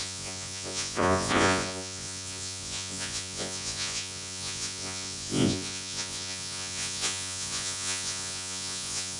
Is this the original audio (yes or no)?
no